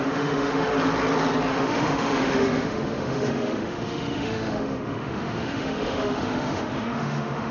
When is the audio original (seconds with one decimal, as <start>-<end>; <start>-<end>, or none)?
0.7-1.5